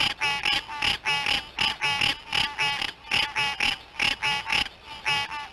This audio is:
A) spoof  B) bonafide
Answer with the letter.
B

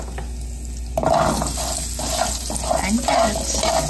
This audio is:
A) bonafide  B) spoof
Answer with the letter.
A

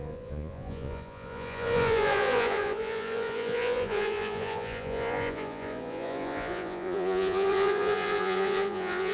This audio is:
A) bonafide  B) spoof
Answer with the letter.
B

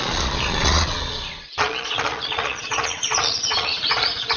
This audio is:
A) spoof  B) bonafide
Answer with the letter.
A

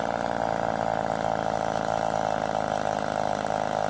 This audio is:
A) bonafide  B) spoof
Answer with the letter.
A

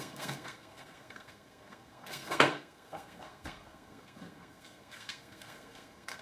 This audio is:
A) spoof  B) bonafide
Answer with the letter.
A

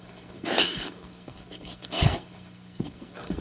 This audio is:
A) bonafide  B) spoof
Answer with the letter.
B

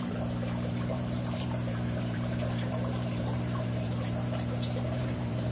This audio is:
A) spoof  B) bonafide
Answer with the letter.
A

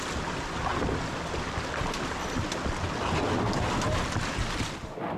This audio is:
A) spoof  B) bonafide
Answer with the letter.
B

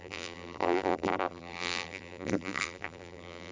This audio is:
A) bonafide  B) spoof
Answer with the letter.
B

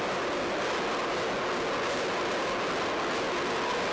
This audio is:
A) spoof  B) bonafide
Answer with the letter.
B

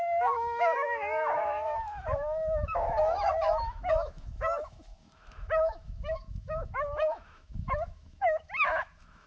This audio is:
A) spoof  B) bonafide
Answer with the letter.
A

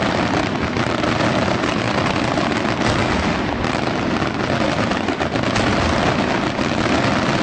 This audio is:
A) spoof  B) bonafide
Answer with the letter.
B